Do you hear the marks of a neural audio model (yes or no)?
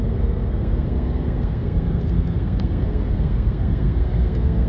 yes